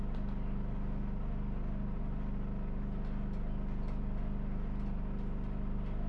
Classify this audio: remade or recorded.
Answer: recorded